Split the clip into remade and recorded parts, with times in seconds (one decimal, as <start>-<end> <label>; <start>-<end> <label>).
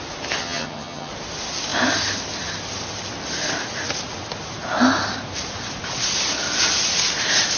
0.0-0.4 recorded; 0.4-1.1 remade; 1.1-7.6 recorded